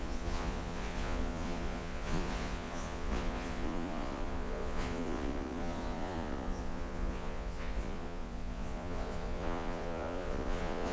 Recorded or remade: remade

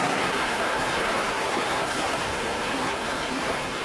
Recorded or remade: remade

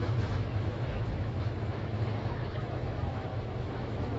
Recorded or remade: remade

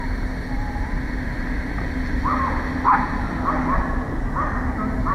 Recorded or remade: recorded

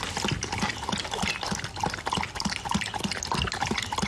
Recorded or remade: recorded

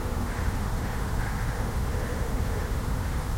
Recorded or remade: remade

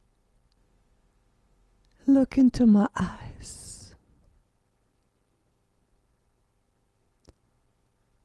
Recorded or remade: recorded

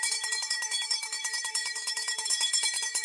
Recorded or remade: remade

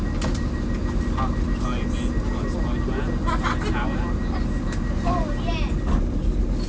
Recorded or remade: recorded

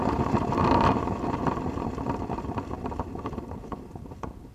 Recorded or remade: remade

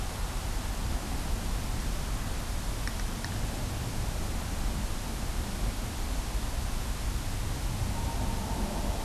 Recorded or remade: recorded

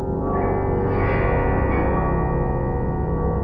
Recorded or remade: recorded